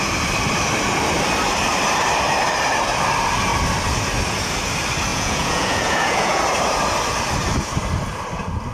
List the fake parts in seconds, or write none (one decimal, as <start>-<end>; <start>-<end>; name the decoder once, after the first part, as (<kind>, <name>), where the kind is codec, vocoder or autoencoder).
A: 5.1-6.4 (vocoder, Vocos)